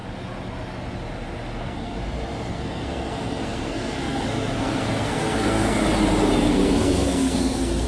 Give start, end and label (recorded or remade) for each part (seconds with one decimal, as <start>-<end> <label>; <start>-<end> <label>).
0.0-1.6 recorded; 1.6-2.0 remade; 2.0-2.5 recorded; 2.5-5.8 remade; 5.8-6.5 recorded; 6.5-7.9 remade